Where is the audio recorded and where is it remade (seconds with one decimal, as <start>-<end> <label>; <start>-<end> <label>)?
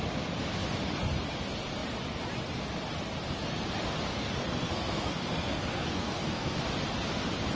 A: 0.0-4.1 recorded; 4.1-6.6 remade; 6.6-7.6 recorded